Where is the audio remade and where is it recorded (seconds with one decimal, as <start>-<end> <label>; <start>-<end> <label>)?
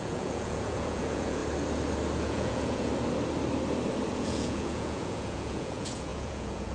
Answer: 0.0-1.4 remade; 1.4-2.2 recorded; 2.2-2.9 remade; 2.9-4.1 recorded; 4.1-6.7 remade